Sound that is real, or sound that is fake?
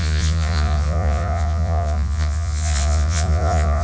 fake